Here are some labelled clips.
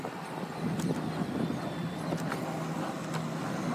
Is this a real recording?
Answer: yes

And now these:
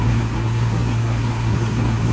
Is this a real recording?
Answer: no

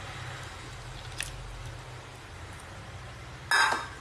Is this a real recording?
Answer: yes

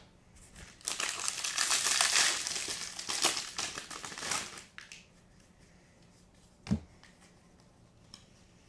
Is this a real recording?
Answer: yes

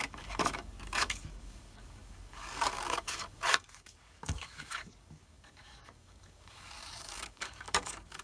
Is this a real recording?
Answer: no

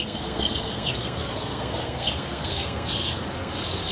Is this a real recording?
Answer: no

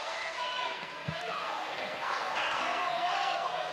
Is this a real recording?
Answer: no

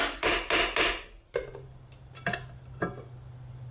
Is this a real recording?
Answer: yes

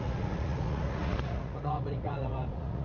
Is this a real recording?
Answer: no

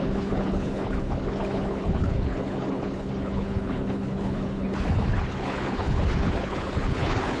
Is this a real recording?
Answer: no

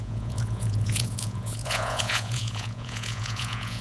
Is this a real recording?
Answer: no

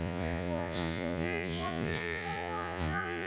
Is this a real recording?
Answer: no